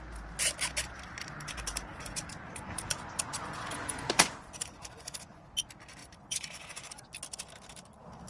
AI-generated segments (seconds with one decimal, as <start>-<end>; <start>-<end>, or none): 1.9-5.5; 6.0-7.0